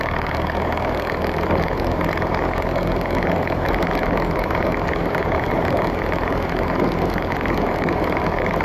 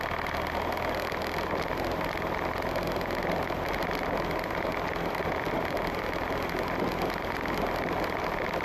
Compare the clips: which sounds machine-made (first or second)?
first